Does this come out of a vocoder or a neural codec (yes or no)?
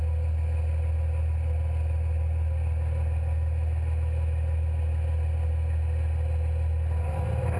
no